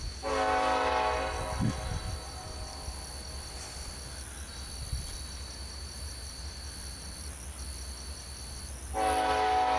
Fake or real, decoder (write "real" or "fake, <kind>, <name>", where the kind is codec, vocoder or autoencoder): real